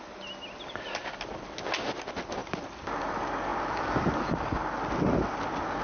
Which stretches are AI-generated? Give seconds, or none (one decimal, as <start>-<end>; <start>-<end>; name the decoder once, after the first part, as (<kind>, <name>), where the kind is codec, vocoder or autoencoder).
none

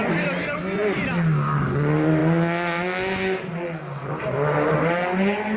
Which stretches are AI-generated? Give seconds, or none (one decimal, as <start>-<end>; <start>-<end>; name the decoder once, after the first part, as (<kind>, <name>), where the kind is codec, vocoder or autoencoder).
none

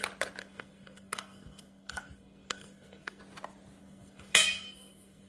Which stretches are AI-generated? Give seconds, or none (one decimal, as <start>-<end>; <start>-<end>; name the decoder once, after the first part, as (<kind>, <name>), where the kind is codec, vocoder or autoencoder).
0.4-3.2 (codec, SNAC); 3.8-5.3

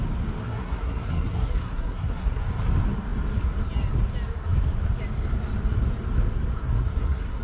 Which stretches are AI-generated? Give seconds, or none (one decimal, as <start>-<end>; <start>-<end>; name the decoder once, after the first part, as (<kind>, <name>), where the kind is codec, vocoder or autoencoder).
0.4-2.4 (codec, SNAC); 6.6-7.4

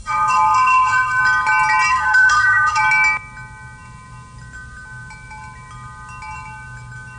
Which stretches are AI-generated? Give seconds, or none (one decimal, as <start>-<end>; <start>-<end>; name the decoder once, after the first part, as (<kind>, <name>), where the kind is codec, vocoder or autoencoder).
0.0-1.2 (codec, SNAC); 1.9-2.8

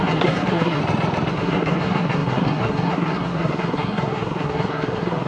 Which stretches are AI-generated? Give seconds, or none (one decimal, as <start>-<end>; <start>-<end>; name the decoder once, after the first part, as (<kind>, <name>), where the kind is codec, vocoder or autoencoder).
0.0-0.8 (codec, SNAC); 1.3-5.3

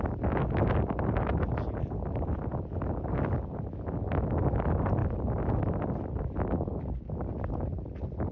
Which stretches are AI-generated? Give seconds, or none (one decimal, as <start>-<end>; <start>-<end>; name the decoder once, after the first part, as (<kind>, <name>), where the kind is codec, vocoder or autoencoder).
none

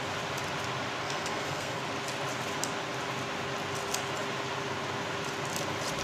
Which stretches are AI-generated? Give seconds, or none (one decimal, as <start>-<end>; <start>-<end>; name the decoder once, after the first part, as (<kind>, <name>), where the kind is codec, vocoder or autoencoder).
1.0-1.8 (codec, SNAC)